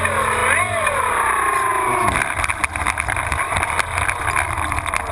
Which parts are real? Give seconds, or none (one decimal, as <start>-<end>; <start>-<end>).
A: 0.0-5.1